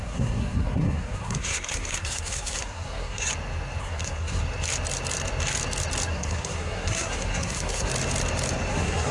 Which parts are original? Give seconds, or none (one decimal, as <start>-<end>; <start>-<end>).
3.3-3.8; 4.4-6.1; 7.9-8.7